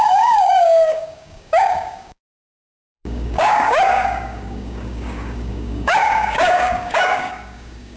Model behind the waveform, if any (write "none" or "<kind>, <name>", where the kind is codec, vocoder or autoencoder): codec, DAC